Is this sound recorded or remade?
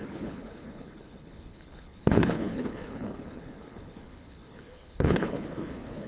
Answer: remade